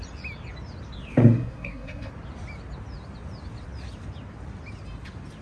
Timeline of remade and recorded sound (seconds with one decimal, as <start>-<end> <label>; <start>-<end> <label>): 0.0-1.2 recorded; 1.2-2.1 remade; 2.1-5.4 recorded